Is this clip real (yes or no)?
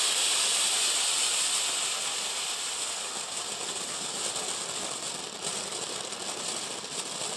yes